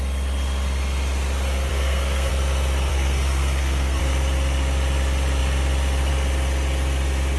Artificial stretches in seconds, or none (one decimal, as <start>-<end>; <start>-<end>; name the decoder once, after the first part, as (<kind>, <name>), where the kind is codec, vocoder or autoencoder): 1.7-2.3 (codec, SNAC); 2.9-4.0